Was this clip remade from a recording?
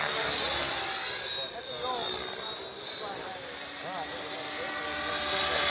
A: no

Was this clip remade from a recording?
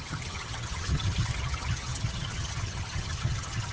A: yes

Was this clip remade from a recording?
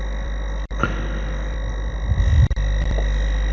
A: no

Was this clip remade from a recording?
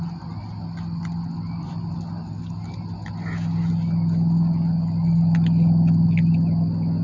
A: no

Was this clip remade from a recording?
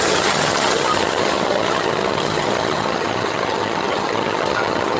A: yes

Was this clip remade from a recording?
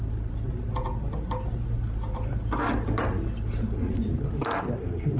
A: no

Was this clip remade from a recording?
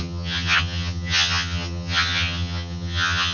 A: yes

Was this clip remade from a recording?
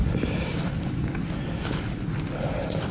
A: no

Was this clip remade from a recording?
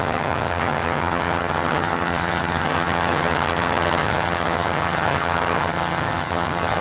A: yes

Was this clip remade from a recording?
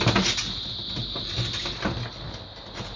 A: no